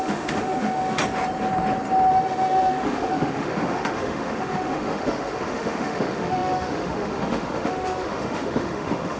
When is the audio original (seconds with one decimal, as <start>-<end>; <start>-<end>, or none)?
1.0-2.1